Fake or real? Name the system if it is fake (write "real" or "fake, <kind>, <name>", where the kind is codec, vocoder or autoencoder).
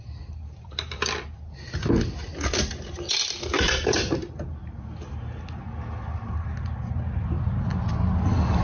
real